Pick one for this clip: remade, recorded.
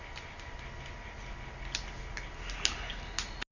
recorded